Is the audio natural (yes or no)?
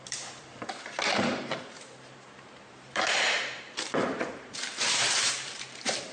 no